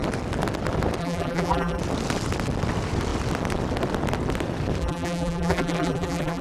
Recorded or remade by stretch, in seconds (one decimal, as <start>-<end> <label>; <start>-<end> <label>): 0.0-1.0 recorded; 1.0-1.8 remade; 1.8-4.8 recorded; 4.8-6.4 remade